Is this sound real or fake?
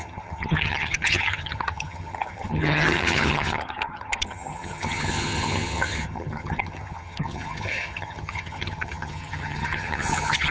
fake